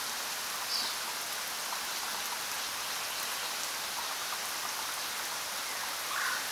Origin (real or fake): real